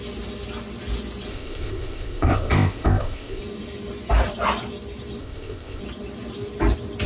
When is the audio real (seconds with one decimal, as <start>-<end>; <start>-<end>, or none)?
0.0-1.3; 3.4-5.2; 5.8-7.1